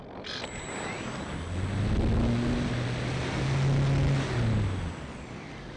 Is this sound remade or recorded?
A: recorded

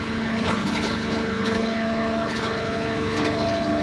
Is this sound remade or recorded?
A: remade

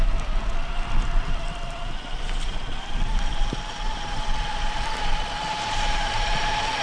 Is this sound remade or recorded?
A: recorded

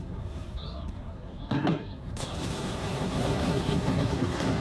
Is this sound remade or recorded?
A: remade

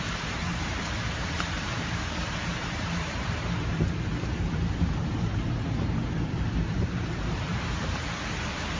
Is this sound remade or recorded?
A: remade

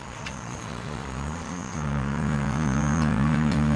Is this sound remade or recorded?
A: remade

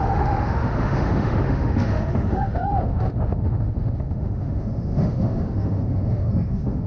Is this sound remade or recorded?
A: remade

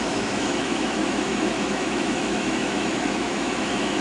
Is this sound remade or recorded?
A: remade